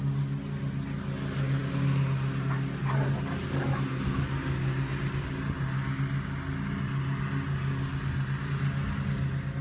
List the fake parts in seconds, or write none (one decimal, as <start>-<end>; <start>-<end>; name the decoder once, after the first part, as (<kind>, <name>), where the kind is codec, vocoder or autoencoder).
none